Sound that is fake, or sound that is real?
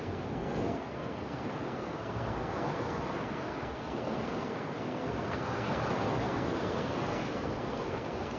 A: fake